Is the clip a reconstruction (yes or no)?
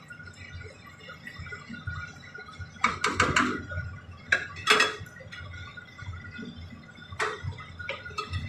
no